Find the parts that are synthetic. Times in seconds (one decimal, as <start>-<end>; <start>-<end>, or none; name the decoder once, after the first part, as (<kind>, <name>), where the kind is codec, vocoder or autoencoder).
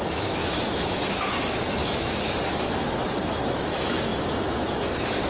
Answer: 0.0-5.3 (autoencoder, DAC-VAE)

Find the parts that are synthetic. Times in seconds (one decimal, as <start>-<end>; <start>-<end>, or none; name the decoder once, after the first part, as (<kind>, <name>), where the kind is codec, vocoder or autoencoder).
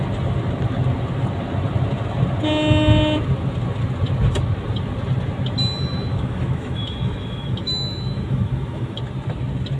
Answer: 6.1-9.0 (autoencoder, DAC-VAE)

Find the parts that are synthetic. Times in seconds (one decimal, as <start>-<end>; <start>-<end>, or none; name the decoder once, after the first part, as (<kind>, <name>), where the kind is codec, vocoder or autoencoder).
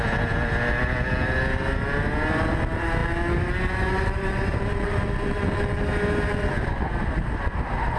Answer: none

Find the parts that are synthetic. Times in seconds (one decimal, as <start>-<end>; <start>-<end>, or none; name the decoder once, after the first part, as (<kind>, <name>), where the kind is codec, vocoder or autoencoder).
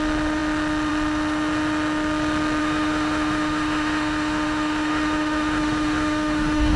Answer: 2.6-6.8 (autoencoder, DAC-VAE)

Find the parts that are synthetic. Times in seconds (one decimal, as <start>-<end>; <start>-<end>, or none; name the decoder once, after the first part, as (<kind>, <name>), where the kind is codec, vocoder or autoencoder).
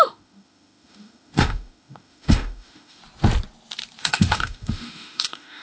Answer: 0.0-3.0 (autoencoder, DAC-VAE); 4.0-5.6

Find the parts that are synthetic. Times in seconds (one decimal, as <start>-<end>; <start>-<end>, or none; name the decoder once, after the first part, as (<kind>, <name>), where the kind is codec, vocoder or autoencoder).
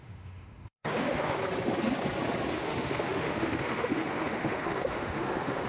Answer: 0.0-1.4 (autoencoder, DAC-VAE); 2.5-5.7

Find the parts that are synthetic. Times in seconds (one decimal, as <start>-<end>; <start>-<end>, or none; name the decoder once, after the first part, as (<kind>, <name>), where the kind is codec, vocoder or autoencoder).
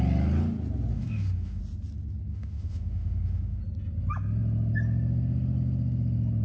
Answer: 0.9-1.6 (autoencoder, DAC-VAE); 2.3-3.6